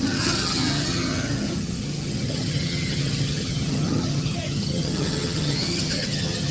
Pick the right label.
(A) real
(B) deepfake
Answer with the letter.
B